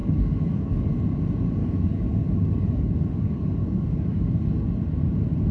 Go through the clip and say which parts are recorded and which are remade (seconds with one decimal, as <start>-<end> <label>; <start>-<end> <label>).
0.0-0.9 remade; 0.9-1.6 recorded; 1.6-4.8 remade; 4.8-5.5 recorded